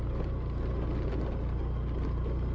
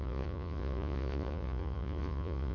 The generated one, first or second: second